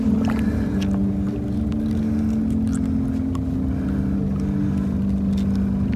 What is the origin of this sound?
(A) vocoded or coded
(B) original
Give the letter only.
B